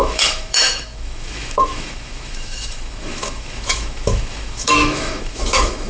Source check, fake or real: fake